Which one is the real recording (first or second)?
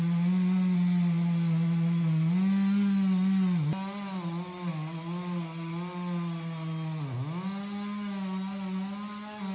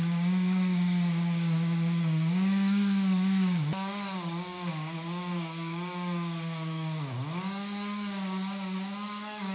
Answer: first